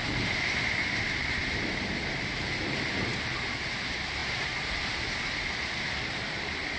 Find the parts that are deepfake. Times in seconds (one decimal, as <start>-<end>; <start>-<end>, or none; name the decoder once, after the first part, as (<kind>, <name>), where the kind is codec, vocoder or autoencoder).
0.0-6.8 (vocoder, BigVGAN v2)